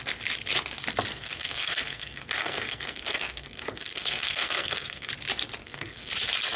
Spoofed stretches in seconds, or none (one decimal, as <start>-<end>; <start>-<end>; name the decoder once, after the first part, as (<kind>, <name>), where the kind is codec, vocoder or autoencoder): 1.1-5.1 (codec, SNAC); 5.6-6.1